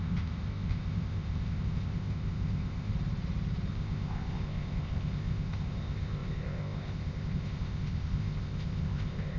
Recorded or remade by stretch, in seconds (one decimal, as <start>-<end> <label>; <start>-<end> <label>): 0.0-2.9 remade; 2.9-3.7 recorded; 3.7-9.4 remade